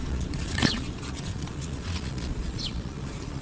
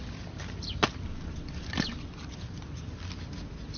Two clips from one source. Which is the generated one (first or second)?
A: first